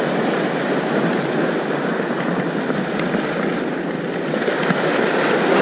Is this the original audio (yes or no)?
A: yes